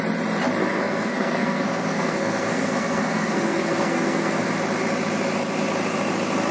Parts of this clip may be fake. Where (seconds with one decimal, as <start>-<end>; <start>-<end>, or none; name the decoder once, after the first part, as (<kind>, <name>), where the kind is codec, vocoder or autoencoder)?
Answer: 0.6-4.5 (codec, SNAC)